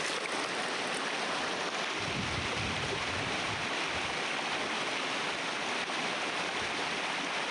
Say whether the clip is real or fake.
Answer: real